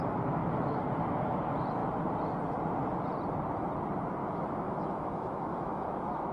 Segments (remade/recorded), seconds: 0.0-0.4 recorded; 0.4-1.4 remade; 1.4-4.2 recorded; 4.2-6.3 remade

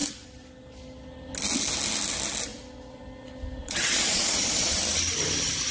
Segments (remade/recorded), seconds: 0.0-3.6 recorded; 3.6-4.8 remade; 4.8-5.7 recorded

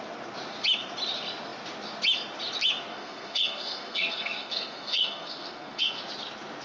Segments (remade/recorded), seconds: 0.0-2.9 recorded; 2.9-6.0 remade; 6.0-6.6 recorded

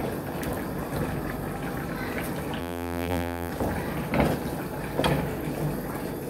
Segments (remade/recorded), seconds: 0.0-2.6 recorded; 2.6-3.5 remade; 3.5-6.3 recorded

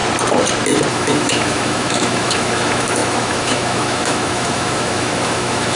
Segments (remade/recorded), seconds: 0.0-0.9 recorded; 0.9-5.8 remade